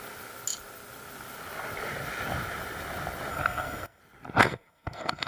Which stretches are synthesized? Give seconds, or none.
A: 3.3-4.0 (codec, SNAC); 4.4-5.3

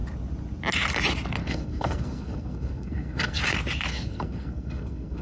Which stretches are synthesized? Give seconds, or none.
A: 1.4-3.4 (codec, SNAC); 3.9-5.2

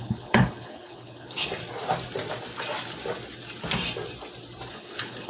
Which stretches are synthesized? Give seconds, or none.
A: 0.0-1.5 (codec, HILCodec); 4.7-5.3

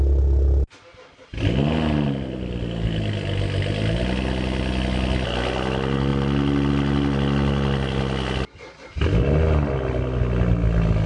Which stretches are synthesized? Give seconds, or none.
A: none

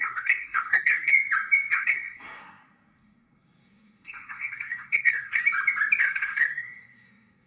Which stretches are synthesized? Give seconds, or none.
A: 0.0-1.1 (codec, SNAC); 1.7-5.4; 6.0-7.5